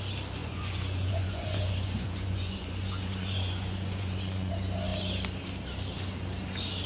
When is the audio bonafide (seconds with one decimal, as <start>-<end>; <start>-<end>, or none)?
0.0-0.4; 4.5-6.9